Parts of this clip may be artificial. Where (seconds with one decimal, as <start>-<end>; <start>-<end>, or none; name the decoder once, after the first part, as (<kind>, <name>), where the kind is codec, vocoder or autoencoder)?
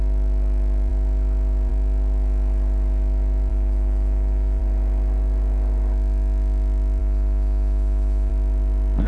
3.5-4.6 (autoencoder, DAC-VAE); 7.0-8.3